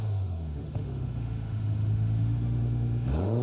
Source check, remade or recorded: remade